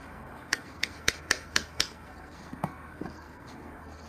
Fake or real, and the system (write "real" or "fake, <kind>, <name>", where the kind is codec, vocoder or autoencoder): fake, codec, SNAC